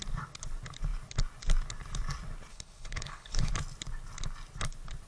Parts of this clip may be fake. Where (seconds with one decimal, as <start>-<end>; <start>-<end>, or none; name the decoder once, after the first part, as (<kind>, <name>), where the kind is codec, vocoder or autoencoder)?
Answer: 2.5-3.5 (codec, HILCodec)